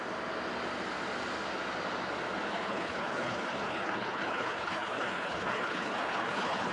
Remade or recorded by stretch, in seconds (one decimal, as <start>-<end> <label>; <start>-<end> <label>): 0.0-2.5 recorded; 2.5-6.7 remade